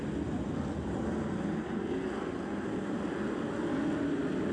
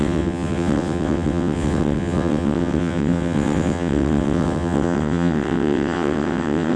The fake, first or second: second